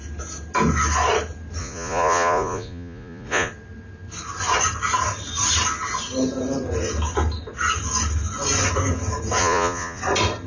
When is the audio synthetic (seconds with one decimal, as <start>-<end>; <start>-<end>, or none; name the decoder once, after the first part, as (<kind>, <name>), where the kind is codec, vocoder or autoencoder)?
1.6-3.5 (vocoder, Vocos); 9.4-10.0